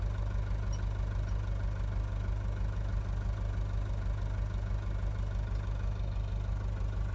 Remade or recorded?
recorded